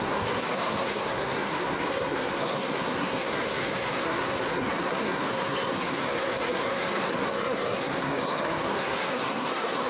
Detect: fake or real fake